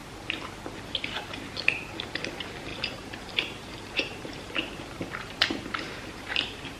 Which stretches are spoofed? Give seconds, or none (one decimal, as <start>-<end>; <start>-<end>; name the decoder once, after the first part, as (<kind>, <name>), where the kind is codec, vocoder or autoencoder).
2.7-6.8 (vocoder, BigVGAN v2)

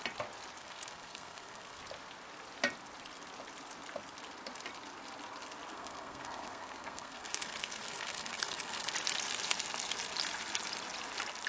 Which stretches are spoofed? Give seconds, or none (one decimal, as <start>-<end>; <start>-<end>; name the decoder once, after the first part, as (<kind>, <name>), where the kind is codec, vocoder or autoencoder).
0.6-1.8 (codec, SNAC); 5.7-8.9

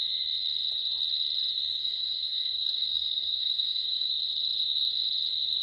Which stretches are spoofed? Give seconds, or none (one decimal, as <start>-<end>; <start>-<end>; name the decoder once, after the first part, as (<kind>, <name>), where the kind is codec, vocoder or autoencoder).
1.8-4.1 (codec, SNAC)

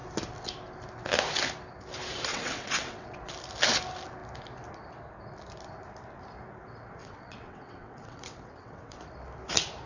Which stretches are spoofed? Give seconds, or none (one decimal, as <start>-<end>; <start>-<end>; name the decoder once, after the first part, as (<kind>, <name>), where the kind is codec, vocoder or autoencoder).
2.3-3.3 (vocoder, WaveNeXt); 7.0-9.0

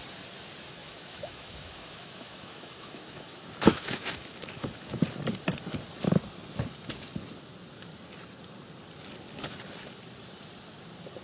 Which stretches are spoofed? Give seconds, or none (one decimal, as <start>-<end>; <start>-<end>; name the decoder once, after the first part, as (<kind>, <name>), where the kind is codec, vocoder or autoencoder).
0.8-5.0 (autoencoder, DAC-VAE)

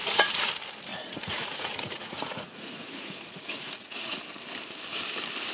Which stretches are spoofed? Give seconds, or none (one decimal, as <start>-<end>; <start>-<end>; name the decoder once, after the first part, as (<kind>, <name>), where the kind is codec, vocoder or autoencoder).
0.0-0.5 (vocoder, Vocos); 0.9-4.2

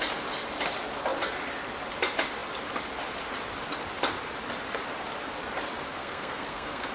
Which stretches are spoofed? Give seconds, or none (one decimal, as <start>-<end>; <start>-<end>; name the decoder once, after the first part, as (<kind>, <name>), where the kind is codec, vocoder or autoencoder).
6.0-6.9 (codec, SNAC)